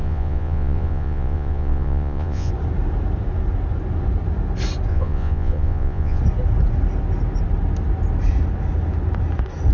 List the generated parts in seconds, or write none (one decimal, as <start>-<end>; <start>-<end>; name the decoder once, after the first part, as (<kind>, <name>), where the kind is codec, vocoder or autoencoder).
0.0-2.5 (vocoder, Vocos); 4.9-6.2